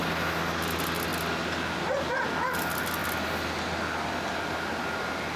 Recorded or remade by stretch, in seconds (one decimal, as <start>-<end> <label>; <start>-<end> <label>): 0.0-5.4 recorded